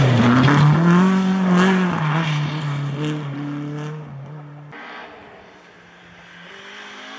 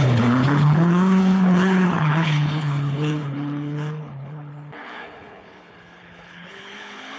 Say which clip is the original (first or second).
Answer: first